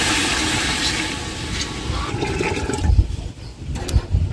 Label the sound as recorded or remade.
recorded